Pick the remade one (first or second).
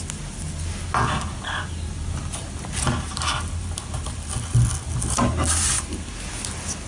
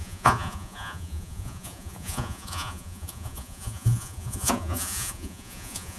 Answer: second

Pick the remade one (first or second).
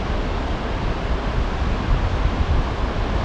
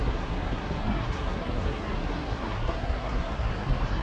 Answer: second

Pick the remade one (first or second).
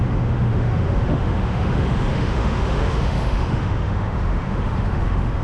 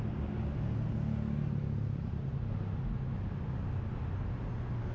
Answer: first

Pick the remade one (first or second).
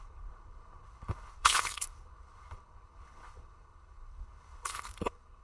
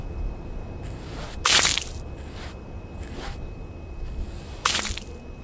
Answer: first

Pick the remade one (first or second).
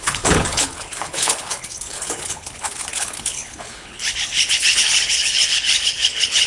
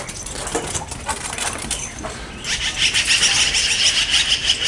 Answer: first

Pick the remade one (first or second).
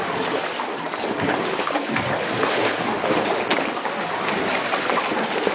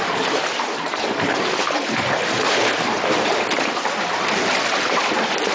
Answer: second